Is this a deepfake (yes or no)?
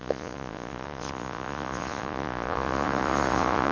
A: yes